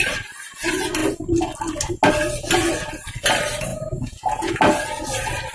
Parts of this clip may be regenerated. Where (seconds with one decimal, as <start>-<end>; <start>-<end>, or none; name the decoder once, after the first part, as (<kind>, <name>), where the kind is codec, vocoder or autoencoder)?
3.7-4.5 (vocoder, Vocos)